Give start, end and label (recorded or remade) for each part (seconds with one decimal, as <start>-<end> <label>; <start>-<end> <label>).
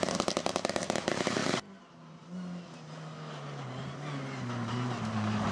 0.0-1.4 remade; 1.4-4.7 recorded; 4.7-5.5 remade